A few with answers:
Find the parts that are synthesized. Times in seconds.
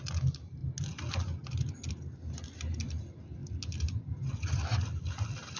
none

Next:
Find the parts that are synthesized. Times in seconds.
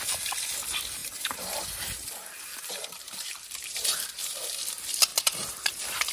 1.0-4.0; 5.1-6.1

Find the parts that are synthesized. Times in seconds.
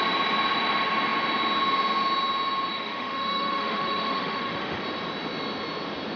2.7-4.8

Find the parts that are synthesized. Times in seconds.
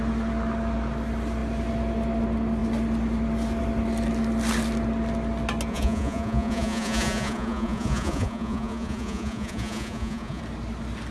5.7-10.4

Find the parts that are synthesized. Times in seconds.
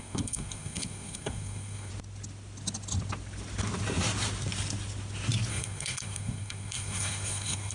0.0-1.9; 5.5-7.7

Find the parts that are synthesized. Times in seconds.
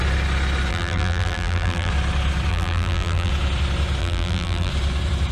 0.7-1.9; 2.5-3.3; 4.0-4.7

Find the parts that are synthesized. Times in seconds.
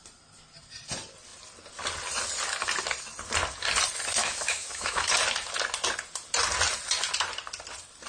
4.2-5.1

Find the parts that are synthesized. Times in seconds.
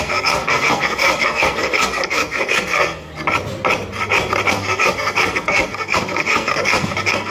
0.0-3.1; 4.5-7.3